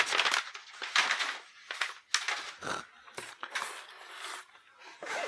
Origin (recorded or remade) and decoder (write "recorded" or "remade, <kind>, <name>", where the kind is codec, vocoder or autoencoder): recorded